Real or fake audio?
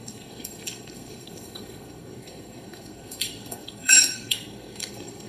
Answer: fake